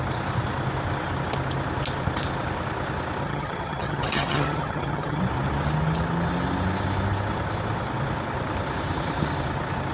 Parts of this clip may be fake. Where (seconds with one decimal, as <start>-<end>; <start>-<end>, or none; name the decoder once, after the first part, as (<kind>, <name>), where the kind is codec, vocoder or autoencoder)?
3.2-5.2 (vocoder, HiFi-GAN)